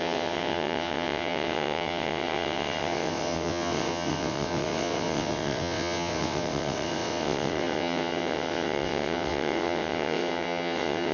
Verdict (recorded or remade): remade